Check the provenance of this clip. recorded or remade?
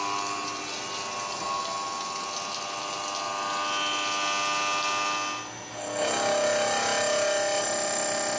recorded